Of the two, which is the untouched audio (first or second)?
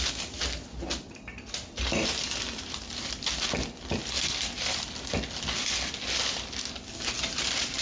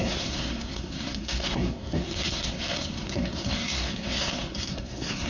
first